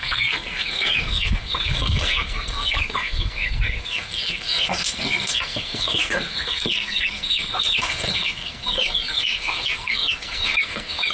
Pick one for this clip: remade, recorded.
remade